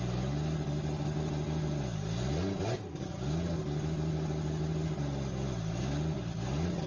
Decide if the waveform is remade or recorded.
recorded